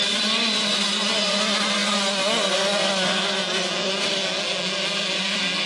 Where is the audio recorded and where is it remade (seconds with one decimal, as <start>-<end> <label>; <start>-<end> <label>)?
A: 0.0-5.7 recorded